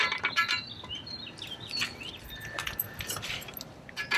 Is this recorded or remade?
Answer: recorded